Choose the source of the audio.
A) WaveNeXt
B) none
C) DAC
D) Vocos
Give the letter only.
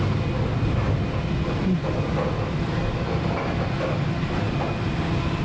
B